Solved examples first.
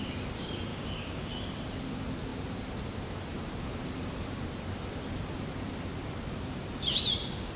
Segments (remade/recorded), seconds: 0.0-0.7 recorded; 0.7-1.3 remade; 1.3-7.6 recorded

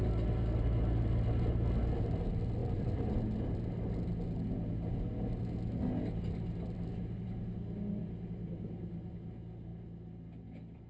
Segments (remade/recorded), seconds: 0.0-10.9 recorded

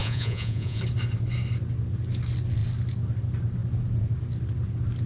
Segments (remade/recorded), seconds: 0.0-0.8 remade; 0.8-5.1 recorded

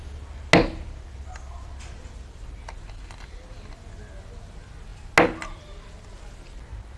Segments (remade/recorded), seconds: 0.0-7.0 recorded

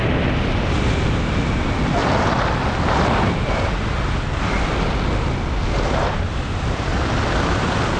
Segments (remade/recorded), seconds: 0.0-2.0 recorded; 2.0-4.7 remade; 4.7-6.9 recorded; 6.9-8.0 remade

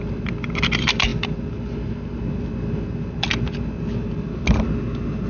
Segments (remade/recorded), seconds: 0.0-5.3 recorded